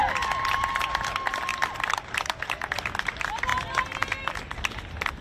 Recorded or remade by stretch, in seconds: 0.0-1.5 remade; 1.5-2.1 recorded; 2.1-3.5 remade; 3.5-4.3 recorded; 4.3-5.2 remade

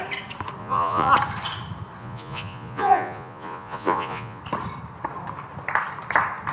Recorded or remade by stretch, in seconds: 0.0-0.6 recorded; 0.6-1.1 remade; 1.1-2.0 recorded; 2.0-4.4 remade; 4.4-6.5 recorded

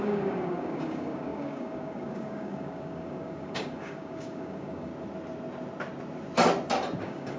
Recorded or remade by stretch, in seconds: 0.0-4.9 remade; 4.9-7.0 recorded; 7.0-7.4 remade

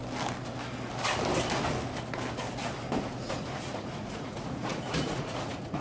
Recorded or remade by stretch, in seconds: 0.0-3.0 recorded; 3.0-5.8 remade

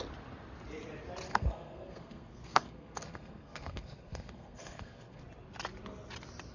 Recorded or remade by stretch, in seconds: 0.0-1.3 recorded; 1.3-5.2 remade; 5.2-6.5 recorded